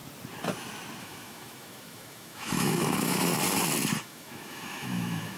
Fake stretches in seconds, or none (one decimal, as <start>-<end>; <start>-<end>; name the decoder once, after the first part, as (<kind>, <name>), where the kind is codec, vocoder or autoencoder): 1.0-3.3 (autoencoder, DAC-VAE); 4.0-5.4